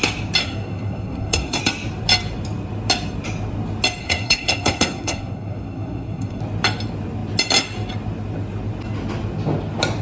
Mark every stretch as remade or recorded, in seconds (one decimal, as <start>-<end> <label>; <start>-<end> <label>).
0.0-0.4 recorded; 0.4-1.6 remade; 1.6-4.0 recorded; 4.0-6.4 remade; 6.4-10.0 recorded